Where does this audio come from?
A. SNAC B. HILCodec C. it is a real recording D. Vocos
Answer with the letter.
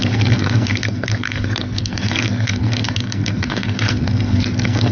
A